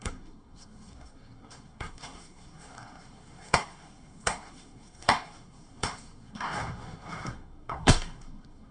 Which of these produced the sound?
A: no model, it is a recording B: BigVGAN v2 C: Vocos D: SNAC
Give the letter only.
D